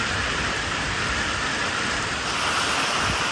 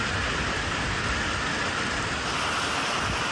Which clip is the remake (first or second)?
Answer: first